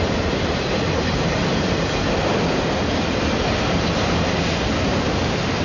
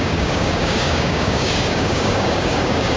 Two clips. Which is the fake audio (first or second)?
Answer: second